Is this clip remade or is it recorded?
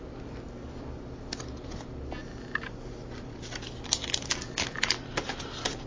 recorded